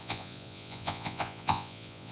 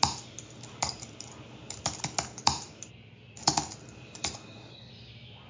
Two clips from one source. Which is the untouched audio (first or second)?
second